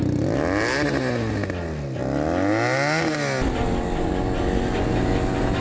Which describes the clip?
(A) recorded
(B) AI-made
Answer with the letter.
A